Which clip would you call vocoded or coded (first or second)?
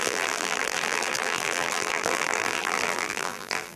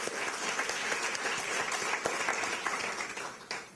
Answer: first